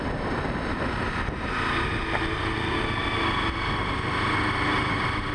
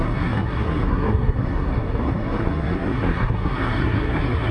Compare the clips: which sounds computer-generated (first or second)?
second